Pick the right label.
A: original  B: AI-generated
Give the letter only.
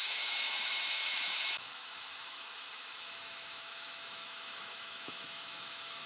B